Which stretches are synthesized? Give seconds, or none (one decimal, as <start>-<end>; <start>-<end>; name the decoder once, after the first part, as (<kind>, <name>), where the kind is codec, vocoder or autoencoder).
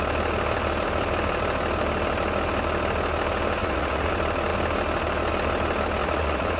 3.6-4.1 (vocoder, Vocos); 6.0-6.6